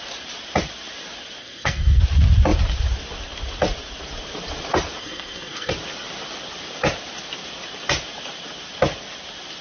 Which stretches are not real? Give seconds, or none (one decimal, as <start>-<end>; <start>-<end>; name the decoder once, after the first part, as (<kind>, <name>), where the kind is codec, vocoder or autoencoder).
1.4-2.0 (codec, SNAC); 5.0-5.7

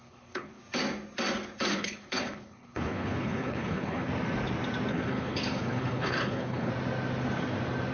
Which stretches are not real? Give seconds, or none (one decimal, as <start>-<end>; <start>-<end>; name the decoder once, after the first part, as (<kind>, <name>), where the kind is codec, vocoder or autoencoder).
0.0-0.6 (codec, HILCodec); 1.7-4.1; 4.9-6.7

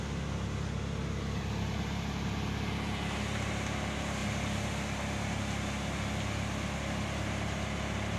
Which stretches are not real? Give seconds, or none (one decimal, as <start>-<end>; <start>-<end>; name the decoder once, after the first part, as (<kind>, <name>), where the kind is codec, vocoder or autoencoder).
none

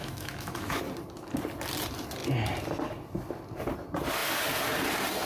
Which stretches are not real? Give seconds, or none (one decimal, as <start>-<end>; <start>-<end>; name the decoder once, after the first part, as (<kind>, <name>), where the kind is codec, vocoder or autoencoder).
0.0-0.8 (autoencoder, DAC-VAE)

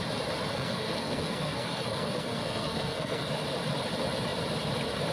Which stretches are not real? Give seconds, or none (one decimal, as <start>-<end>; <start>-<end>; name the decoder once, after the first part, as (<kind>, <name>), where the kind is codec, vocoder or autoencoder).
0.5-3.3 (codec, SNAC)

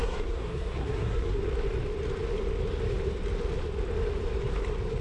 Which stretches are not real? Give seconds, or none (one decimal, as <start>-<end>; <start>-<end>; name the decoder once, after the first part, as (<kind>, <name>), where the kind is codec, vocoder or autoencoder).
0.0-1.4 (codec, SNAC)

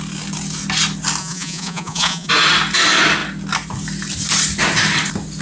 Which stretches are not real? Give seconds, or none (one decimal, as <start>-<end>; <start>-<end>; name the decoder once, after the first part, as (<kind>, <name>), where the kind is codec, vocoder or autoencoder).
1.2-2.3 (vocoder, Vocos)